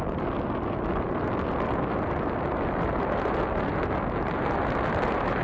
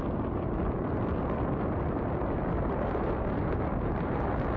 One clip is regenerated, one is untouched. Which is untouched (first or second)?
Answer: first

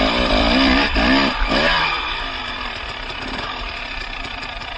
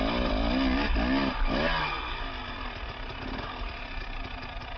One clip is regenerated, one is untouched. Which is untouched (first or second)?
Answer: second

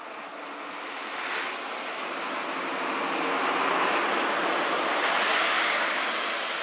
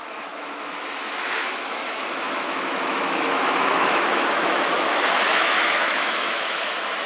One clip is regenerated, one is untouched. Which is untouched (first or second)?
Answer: first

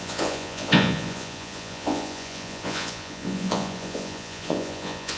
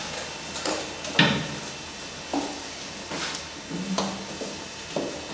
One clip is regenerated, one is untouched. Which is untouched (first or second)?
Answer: second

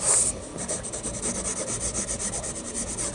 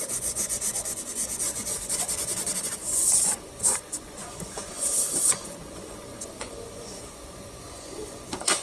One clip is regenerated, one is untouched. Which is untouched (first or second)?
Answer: first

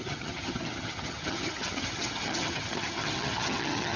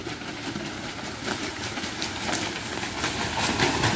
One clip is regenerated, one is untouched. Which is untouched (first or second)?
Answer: second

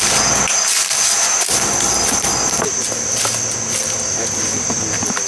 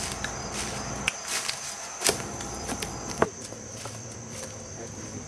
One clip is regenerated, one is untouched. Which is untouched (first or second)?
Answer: first